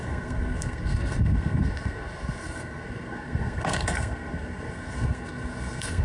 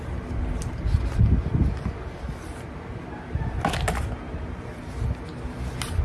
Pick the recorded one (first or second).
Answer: second